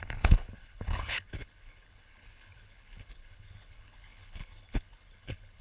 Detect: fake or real fake